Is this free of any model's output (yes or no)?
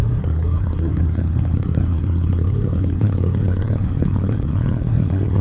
no